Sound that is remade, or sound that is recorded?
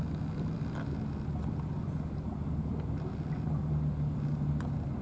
recorded